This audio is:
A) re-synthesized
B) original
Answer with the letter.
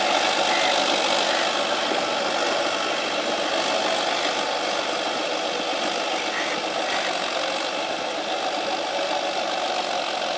B